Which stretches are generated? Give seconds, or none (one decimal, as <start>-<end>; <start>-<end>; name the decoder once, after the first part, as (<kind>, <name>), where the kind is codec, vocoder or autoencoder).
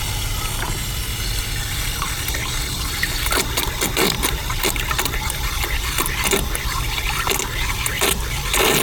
0.8-1.4 (vocoder, BigVGAN v2)